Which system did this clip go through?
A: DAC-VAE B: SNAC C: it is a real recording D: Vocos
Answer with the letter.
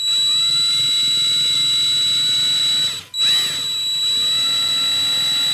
C